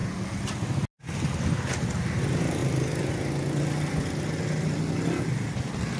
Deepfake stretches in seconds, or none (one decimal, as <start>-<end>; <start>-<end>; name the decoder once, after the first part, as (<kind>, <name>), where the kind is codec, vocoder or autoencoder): none